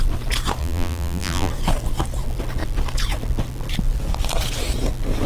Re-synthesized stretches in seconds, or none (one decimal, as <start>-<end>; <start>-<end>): 0.6-1.5